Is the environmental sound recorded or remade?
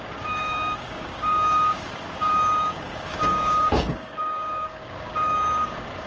remade